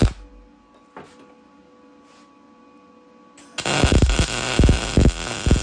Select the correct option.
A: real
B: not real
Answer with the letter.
A